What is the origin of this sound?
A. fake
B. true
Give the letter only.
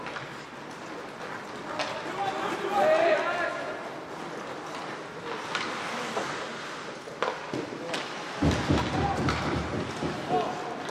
B